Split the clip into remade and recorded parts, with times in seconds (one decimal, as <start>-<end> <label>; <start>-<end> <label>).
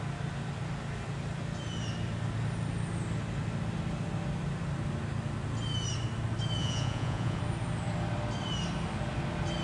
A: 0.0-6.6 recorded; 6.6-7.4 remade; 7.4-9.6 recorded